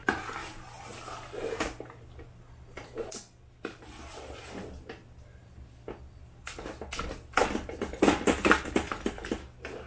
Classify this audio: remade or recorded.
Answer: recorded